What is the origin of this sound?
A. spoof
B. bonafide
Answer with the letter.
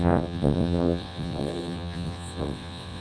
A